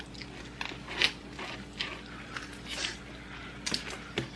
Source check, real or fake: real